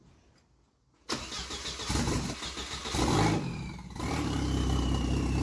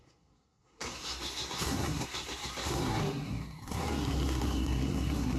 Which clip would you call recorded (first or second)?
first